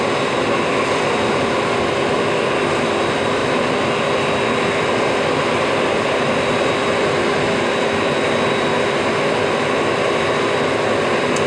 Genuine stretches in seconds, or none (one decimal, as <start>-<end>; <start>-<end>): 0.0-11.5